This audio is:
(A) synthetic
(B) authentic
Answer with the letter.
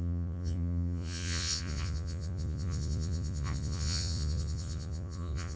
A